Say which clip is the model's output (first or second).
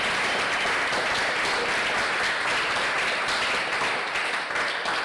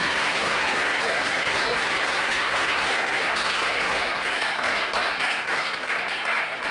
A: second